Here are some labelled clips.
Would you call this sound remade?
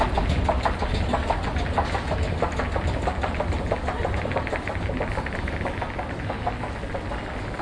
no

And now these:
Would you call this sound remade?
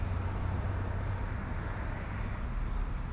no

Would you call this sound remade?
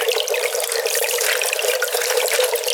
no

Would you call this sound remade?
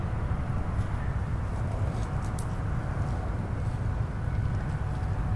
no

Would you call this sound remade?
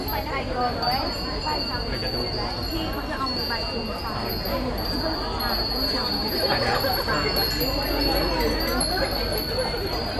no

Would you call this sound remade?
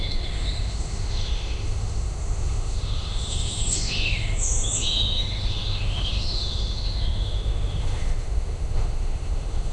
yes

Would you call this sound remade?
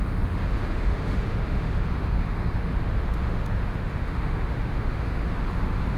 yes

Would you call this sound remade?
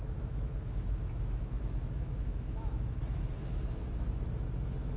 yes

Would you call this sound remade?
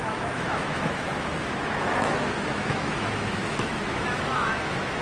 yes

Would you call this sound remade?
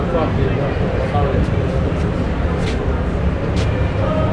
no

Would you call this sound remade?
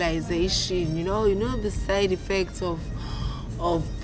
no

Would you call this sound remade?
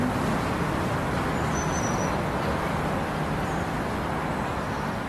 no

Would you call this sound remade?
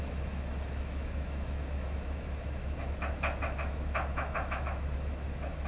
yes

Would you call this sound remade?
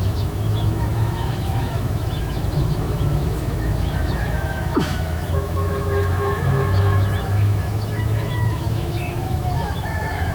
yes